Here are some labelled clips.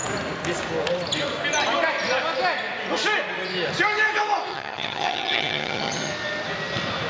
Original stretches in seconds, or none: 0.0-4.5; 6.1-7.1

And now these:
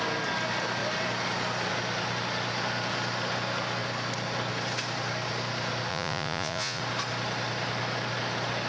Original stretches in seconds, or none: 0.0-5.9; 6.8-8.7

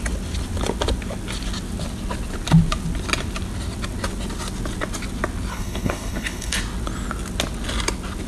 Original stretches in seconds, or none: 0.0-5.5; 6.6-8.3

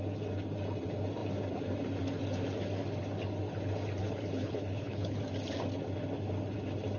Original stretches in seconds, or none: 0.0-4.0; 5.2-7.0

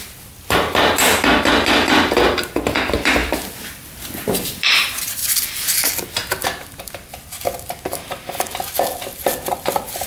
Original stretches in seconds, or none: 0.0-3.2; 4.8-10.1

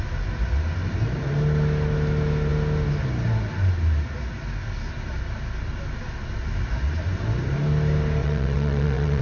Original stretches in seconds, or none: 0.0-8.2

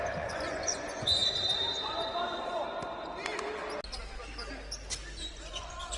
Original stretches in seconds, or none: 1.2-1.8; 2.6-5.2